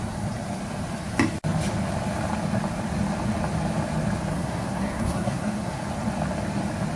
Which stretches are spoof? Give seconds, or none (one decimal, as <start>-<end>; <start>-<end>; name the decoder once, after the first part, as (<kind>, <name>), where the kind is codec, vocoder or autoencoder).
4.3-5.8 (codec, SNAC)